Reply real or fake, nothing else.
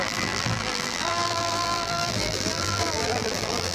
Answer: fake